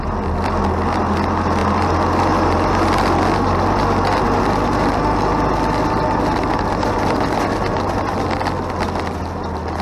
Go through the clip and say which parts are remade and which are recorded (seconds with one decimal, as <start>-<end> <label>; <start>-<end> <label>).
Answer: 0.0-9.8 recorded